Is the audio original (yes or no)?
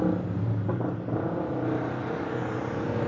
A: yes